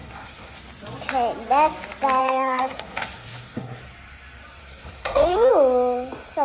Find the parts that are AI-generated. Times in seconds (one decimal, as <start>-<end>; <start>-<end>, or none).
0.0-0.6; 2.2-3.8; 4.6-5.5